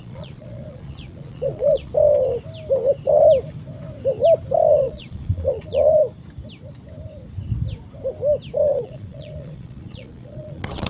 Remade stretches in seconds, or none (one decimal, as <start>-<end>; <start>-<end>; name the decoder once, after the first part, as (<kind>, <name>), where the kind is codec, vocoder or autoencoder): 0.0-1.9 (vocoder, Vocos); 4.7-6.0; 8.6-10.9